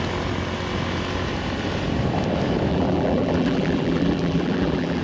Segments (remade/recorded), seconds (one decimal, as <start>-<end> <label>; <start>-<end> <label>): 0.0-2.7 recorded; 2.7-5.0 remade